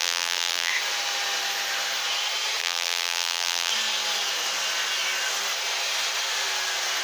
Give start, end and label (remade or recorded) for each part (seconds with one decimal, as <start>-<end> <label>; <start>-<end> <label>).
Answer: 0.0-0.7 remade; 0.7-2.6 recorded; 2.6-3.7 remade; 3.7-7.0 recorded